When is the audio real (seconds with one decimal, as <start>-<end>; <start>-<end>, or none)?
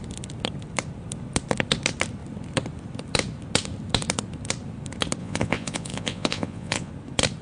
0.0-5.2; 6.9-7.4